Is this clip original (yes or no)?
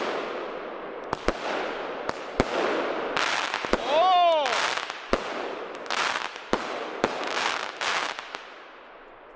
yes